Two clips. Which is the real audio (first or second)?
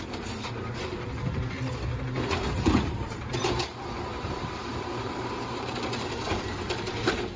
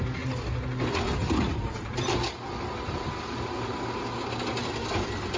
second